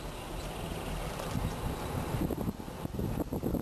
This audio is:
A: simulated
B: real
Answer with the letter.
B